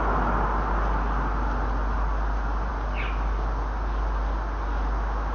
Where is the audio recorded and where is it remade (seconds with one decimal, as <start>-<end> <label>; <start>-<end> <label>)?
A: 0.0-5.3 recorded